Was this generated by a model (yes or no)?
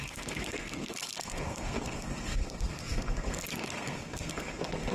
yes